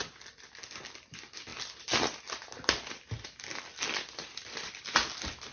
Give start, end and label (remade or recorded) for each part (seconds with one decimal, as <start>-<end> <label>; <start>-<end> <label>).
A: 0.0-5.5 recorded